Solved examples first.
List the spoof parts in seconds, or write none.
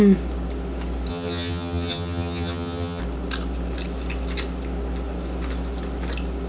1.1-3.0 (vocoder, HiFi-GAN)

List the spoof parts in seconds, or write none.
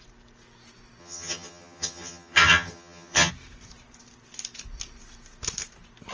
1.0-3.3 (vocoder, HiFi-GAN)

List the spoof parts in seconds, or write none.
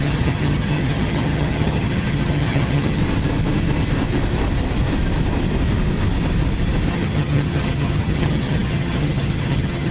0.0-3.0 (vocoder, HiFi-GAN); 6.9-9.9